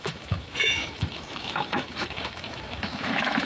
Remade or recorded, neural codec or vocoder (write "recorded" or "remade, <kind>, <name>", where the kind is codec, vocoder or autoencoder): remade, autoencoder, DAC-VAE